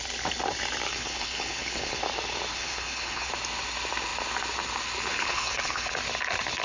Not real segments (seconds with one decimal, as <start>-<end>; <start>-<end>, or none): 0.9-2.0; 2.5-3.3; 5.1-5.9